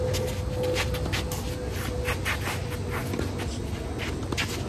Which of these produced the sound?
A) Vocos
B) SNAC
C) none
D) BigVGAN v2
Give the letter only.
C